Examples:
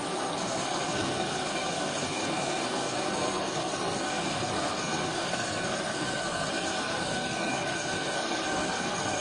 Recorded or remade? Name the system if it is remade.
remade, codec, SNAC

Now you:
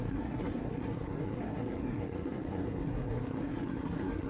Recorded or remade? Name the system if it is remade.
remade, codec, SNAC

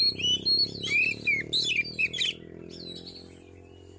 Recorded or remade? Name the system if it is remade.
recorded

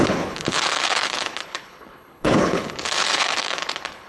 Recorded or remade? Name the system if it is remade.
remade, codec, HILCodec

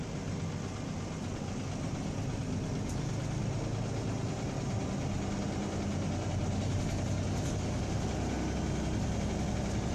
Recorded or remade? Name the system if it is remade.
recorded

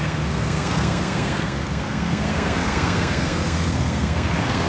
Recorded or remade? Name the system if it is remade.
remade, codec, SNAC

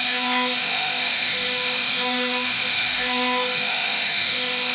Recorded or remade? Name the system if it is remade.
remade, autoencoder, DAC-VAE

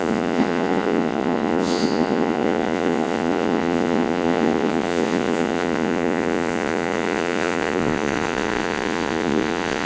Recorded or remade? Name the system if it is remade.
remade, vocoder, Vocos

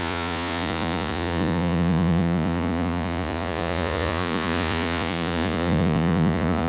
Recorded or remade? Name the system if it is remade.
remade, vocoder, Vocos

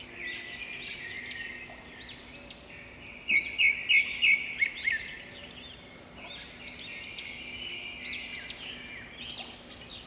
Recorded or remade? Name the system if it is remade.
recorded